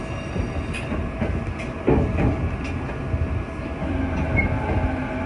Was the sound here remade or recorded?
recorded